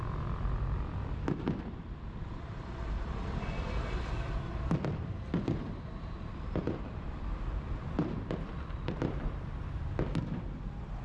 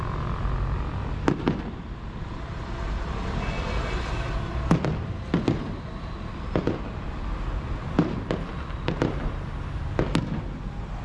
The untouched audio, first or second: second